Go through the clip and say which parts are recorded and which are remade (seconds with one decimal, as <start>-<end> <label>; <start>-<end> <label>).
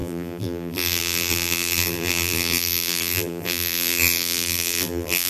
0.0-5.3 remade